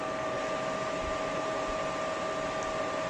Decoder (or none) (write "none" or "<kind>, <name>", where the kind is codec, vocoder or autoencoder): none